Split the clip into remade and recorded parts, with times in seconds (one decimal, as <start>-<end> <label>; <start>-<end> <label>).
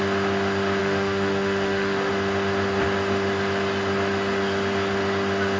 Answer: 0.0-0.8 recorded; 0.8-2.1 remade; 2.1-5.6 recorded